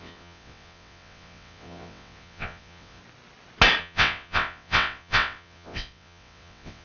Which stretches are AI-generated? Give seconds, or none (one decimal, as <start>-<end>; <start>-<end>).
0.0-3.0; 3.8-6.8